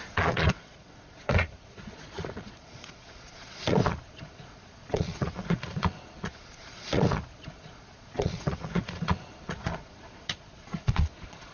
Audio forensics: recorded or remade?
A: remade